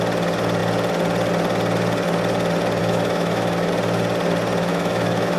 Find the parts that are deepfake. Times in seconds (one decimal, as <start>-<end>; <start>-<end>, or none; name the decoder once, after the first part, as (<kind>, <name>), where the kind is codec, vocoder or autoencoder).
2.8-3.7 (autoencoder, DAC-VAE); 4.7-5.4